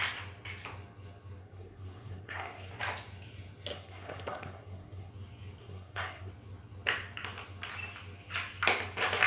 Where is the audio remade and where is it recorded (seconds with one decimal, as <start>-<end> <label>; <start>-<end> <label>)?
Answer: 0.0-1.4 recorded; 1.4-2.7 remade; 2.7-3.7 recorded; 3.7-5.1 remade; 5.1-5.6 recorded; 5.6-6.3 remade; 6.3-9.3 recorded